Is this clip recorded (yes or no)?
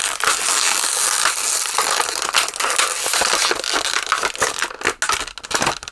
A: yes